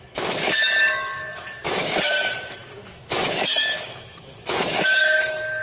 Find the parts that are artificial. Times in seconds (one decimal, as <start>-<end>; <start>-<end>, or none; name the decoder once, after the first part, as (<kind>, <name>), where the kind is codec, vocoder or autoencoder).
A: 0.0-5.6 (autoencoder, DAC-VAE)